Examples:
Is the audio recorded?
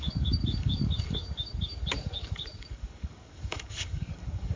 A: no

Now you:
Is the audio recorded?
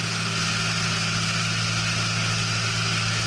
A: yes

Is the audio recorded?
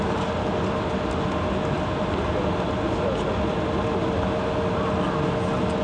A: yes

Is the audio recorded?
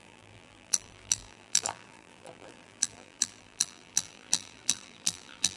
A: no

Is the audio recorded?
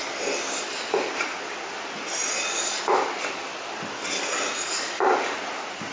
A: yes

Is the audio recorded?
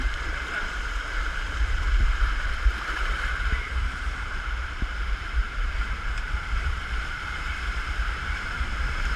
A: no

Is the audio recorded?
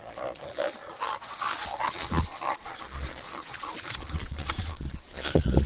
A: no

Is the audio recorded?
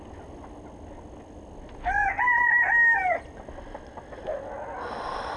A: yes